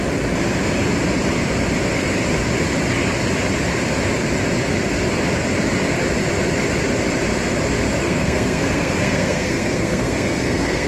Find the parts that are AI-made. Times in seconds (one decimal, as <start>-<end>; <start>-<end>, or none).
8.0-10.9

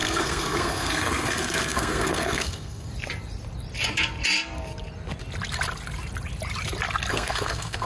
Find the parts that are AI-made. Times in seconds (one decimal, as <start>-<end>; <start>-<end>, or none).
0.0-2.9; 7.1-7.9

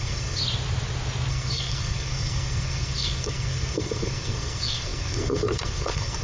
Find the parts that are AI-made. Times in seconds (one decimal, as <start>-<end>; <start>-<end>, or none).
0.0-0.4; 1.3-6.2

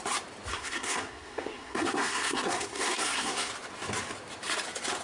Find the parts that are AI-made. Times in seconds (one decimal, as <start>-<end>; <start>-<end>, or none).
0.5-3.5

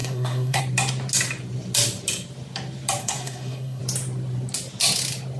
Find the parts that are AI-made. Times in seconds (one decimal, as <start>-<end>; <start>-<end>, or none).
0.0-0.6; 3.0-3.8

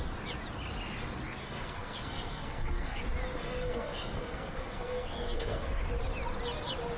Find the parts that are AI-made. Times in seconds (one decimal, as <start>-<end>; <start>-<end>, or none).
1.4-3.0; 3.4-5.8